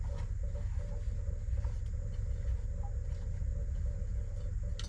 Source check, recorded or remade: recorded